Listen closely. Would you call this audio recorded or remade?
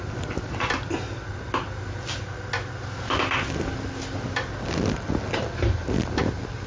recorded